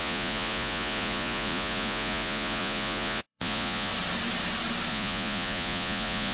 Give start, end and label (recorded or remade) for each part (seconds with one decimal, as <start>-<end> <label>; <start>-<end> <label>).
0.0-3.9 remade; 3.9-4.9 recorded; 4.9-6.3 remade